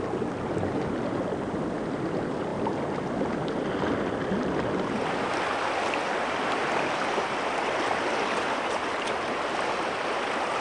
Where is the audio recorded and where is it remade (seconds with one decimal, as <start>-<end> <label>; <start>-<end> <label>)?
0.0-10.6 recorded

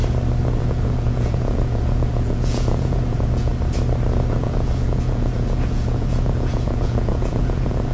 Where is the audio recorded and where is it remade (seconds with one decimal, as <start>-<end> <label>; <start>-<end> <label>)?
0.0-0.6 recorded; 0.6-3.5 remade; 3.5-4.3 recorded; 4.3-7.9 remade

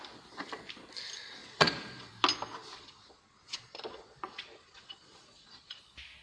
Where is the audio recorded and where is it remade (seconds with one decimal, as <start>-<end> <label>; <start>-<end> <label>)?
0.0-1.4 recorded; 1.4-2.1 remade; 2.1-2.6 recorded; 2.6-5.8 remade; 5.8-6.2 recorded

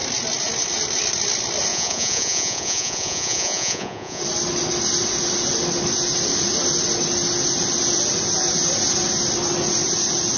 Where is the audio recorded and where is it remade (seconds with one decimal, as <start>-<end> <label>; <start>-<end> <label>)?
0.0-1.7 recorded; 1.7-4.2 remade; 4.2-10.4 recorded